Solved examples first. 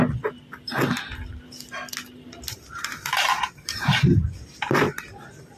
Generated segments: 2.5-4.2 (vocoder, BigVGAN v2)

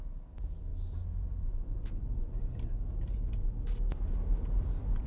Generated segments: 0.7-3.5 (vocoder, BigVGAN v2)

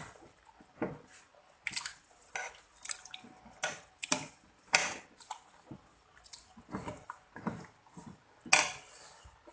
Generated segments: 0.0-1.3 (vocoder, BigVGAN v2); 3.1-4.8

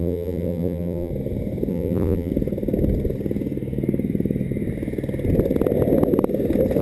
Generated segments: 0.0-1.1 (vocoder, BigVGAN v2); 1.7-2.3

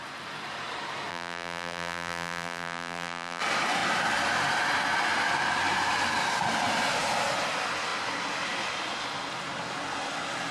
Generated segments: 1.1-3.4 (vocoder, BigVGAN v2)